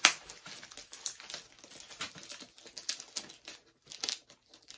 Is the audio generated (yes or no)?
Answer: no